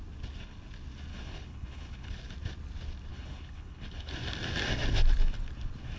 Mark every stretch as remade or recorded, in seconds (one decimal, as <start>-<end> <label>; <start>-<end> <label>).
0.0-1.1 recorded; 1.1-2.1 remade; 2.1-3.1 recorded; 3.1-4.1 remade; 4.1-6.0 recorded